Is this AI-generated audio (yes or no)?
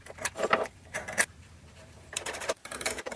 yes